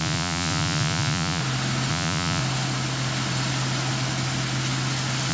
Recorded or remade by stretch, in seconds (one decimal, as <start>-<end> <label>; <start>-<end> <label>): 0.0-1.4 remade; 1.4-1.9 recorded; 1.9-2.4 remade; 2.4-5.3 recorded